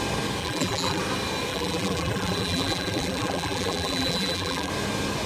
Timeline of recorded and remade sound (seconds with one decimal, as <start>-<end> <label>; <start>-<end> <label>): 0.0-0.4 recorded; 0.4-1.0 remade; 1.0-1.5 recorded; 1.5-4.7 remade; 4.7-5.3 recorded